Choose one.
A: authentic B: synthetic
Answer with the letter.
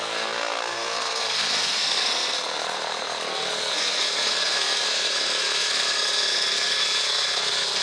B